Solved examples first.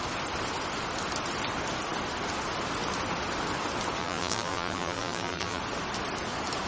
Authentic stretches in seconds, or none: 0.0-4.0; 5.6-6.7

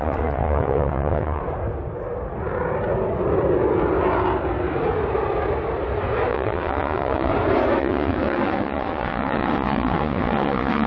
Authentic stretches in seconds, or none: 1.4-6.3; 7.3-7.8

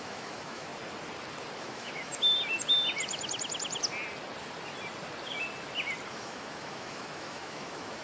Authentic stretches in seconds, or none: 0.7-1.6; 2.1-6.1

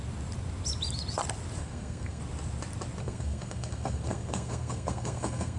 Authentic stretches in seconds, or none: 0.0-1.6; 2.2-3.0

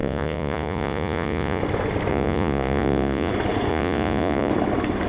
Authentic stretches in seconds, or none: 1.6-2.1; 3.3-3.7; 4.5-5.1

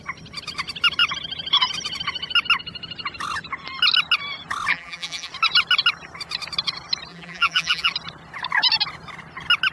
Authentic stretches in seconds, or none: 0.0-4.7; 5.3-7.1; 7.9-9.7